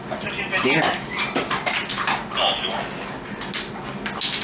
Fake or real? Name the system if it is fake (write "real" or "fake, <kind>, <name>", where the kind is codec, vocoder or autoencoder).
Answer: real